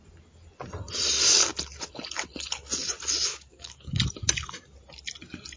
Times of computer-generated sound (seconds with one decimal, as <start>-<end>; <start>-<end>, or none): 3.3-3.9